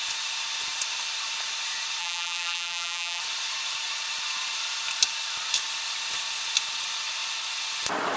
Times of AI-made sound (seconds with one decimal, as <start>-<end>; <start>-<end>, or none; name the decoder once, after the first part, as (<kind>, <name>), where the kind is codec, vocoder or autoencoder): 2.0-3.2 (vocoder, BigVGAN v2)